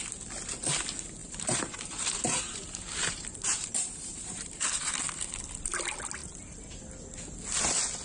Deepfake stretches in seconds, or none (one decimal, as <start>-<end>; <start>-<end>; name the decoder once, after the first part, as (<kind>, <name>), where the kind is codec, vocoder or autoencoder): 1.2-5.0 (vocoder, BigVGAN v2)